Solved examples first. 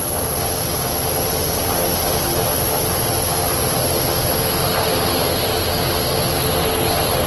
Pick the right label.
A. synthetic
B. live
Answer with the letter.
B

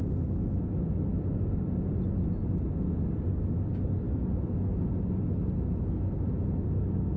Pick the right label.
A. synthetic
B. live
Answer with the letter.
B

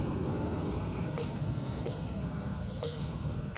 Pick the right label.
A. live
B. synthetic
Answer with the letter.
B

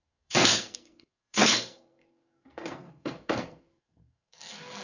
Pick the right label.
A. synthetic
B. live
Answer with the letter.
A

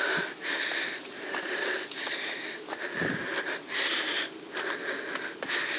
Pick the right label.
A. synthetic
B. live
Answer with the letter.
B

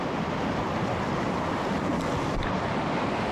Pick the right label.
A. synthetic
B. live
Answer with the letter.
B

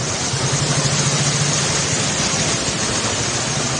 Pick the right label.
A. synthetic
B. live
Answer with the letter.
B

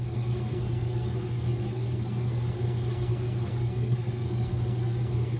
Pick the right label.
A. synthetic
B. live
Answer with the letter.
A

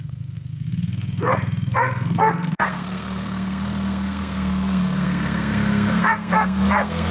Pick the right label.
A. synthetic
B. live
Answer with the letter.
A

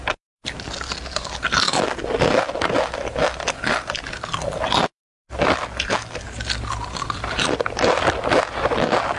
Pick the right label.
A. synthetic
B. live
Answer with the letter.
B